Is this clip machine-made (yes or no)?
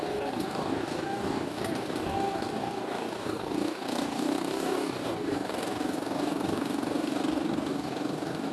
yes